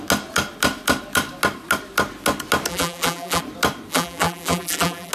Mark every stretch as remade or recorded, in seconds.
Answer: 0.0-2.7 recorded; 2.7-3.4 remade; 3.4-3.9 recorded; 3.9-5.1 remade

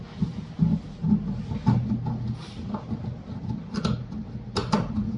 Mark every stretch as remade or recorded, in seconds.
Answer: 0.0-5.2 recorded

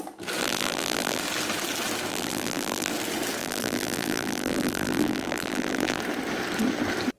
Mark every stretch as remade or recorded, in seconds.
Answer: 0.0-0.4 recorded; 0.4-1.2 remade; 1.2-2.1 recorded; 2.1-2.9 remade; 2.9-3.4 recorded; 3.4-6.0 remade; 6.0-7.2 recorded